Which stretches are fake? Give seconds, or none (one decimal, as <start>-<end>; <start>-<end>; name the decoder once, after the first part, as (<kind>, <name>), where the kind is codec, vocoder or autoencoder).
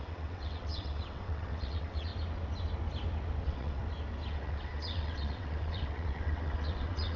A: 0.0-2.1 (vocoder, WaveNeXt); 3.4-3.8; 4.3-7.2